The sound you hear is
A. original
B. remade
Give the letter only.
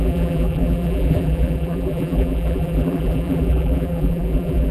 B